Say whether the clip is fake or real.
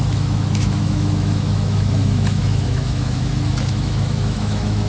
fake